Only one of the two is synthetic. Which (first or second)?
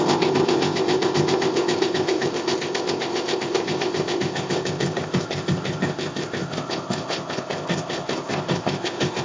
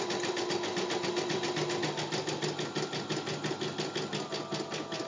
first